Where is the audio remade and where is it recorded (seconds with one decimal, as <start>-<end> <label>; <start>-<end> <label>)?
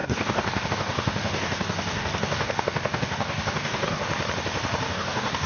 0.0-4.1 remade; 4.1-4.8 recorded; 4.8-5.5 remade